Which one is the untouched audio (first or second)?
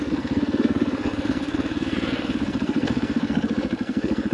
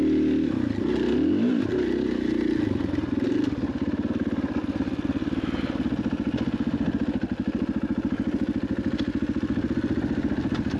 second